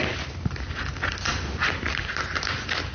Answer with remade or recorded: recorded